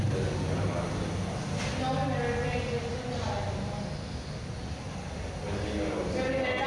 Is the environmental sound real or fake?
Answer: real